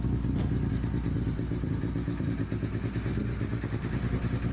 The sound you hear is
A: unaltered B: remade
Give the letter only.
A